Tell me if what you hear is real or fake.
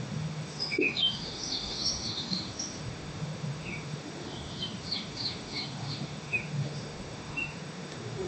fake